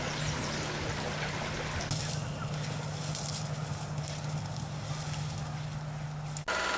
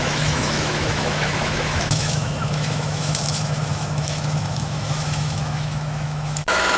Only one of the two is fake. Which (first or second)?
second